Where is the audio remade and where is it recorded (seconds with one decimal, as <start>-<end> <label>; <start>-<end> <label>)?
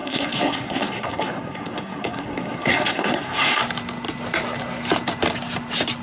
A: 0.0-3.6 remade; 3.6-6.0 recorded